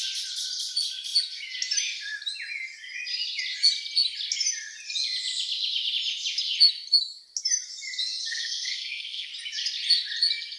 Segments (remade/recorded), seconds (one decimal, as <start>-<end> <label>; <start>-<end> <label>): 0.0-8.3 recorded; 8.3-9.3 remade; 9.3-10.6 recorded

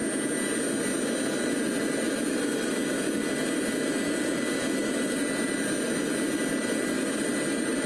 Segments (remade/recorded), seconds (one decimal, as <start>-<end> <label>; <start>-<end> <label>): 0.0-7.9 recorded